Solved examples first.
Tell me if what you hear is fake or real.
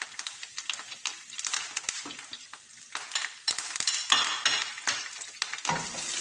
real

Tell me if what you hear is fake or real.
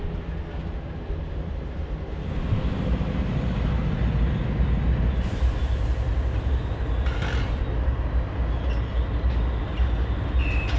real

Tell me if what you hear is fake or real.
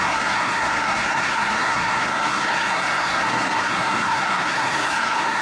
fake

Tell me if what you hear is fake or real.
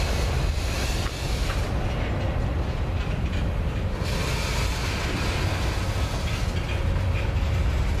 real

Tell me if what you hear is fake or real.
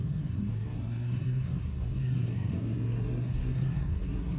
fake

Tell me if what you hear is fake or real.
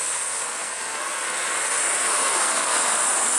fake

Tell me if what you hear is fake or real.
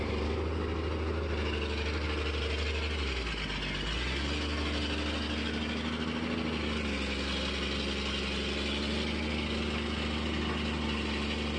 real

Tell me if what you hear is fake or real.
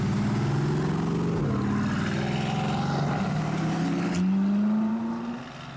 real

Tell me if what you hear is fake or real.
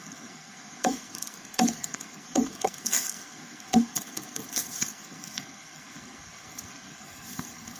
fake